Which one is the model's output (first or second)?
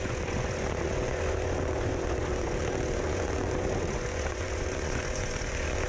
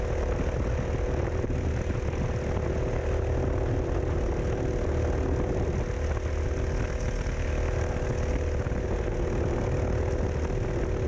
first